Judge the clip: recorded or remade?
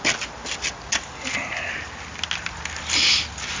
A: recorded